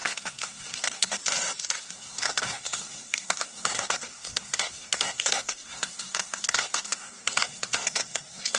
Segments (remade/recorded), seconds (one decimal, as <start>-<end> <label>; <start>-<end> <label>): 0.0-1.2 remade; 1.2-1.8 recorded; 1.8-8.6 remade